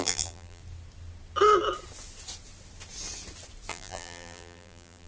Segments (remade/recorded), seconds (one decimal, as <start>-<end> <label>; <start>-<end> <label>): 0.0-0.6 remade; 0.6-3.7 recorded; 3.7-5.1 remade

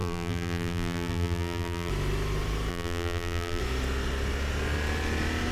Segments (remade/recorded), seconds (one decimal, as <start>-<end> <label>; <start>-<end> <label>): 0.0-1.9 remade; 1.9-2.7 recorded; 2.7-3.6 remade; 3.6-5.5 recorded